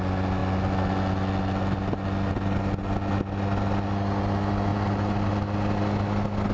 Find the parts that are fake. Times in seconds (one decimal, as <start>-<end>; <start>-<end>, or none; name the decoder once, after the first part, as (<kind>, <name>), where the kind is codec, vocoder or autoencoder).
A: 4.7-5.3 (vocoder, BigVGAN v2)